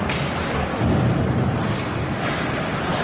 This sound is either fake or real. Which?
real